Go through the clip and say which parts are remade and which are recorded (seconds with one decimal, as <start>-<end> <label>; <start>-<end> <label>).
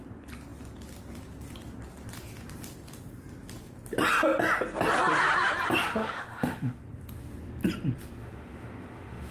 0.0-6.0 recorded; 6.0-6.8 remade; 6.8-8.2 recorded; 8.2-9.3 remade